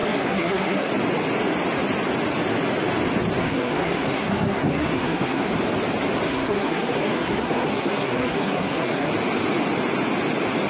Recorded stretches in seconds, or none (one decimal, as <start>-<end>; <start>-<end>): 0.9-3.4; 5.5-6.3; 9.1-10.7